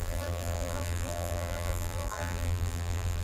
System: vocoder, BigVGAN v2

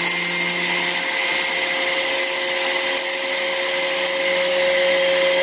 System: none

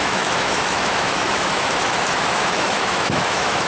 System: autoencoder, DAC-VAE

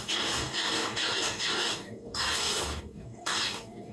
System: codec, DAC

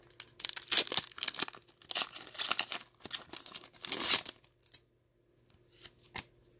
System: none